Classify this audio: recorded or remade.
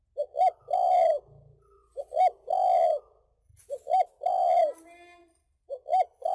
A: recorded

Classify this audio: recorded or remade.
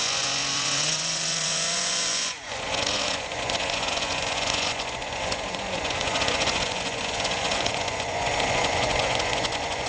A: remade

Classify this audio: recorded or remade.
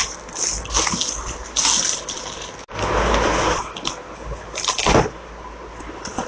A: recorded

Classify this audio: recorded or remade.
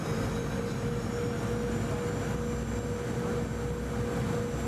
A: recorded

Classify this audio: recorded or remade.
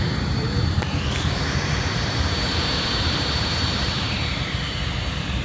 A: remade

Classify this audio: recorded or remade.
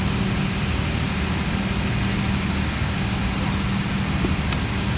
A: recorded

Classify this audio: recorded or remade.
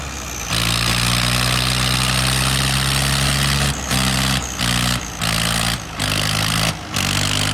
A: recorded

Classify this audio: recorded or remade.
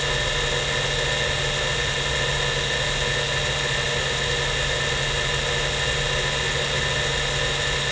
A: recorded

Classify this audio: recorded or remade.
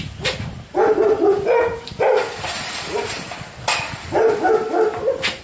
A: recorded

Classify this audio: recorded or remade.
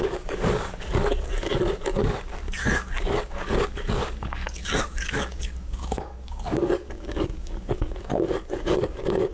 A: remade